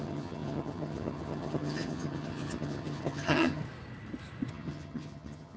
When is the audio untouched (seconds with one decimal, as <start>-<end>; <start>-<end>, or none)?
3.6-4.5